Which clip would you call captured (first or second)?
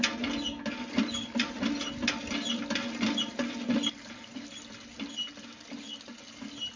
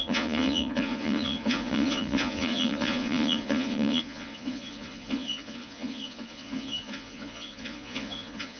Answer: first